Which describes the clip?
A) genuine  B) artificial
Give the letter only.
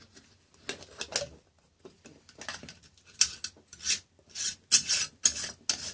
A